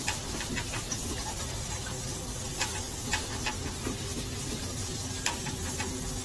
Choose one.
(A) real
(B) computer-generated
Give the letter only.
A